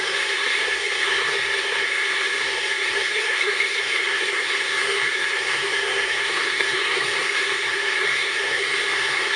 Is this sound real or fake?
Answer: fake